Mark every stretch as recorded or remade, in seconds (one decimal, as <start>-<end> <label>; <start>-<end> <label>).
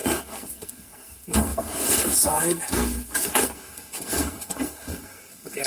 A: 0.0-5.7 remade